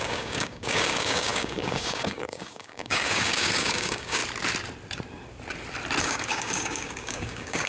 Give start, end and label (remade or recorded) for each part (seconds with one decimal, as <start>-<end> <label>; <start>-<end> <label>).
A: 0.0-4.2 remade; 4.2-6.0 recorded; 6.0-7.7 remade